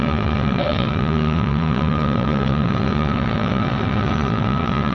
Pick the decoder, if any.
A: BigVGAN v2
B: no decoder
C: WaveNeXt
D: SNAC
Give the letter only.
C